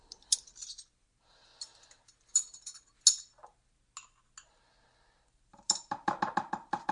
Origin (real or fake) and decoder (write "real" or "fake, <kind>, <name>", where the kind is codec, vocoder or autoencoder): real